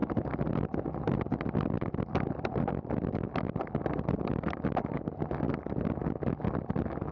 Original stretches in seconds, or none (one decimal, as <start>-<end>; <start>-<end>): 0.0-7.1